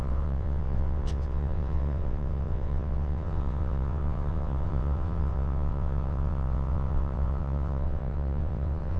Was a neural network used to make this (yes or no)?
yes